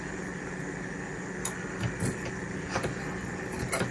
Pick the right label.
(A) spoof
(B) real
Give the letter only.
B